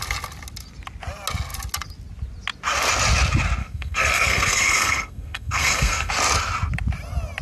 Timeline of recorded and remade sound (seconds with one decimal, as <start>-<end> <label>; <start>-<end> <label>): 0.0-3.6 recorded; 3.6-6.1 remade; 6.1-7.4 recorded